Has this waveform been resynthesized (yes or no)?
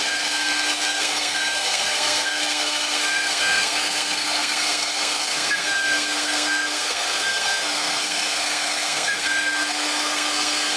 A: yes